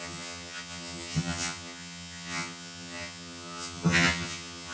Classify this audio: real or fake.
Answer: fake